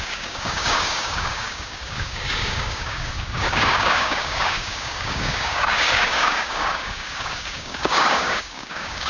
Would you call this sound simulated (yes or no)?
yes